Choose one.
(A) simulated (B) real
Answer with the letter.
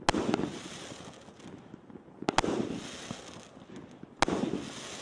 B